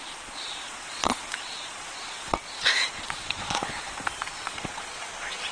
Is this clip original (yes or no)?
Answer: no